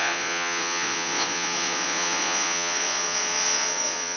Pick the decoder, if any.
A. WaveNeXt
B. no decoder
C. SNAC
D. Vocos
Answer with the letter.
D